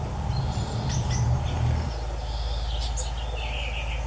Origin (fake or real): real